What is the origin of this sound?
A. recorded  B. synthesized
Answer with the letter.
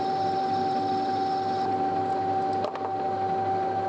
A